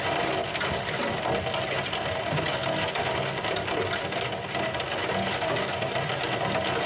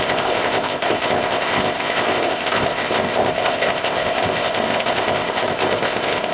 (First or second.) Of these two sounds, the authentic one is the first